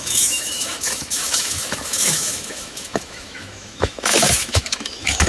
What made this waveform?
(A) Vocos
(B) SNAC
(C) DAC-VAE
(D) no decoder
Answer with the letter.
C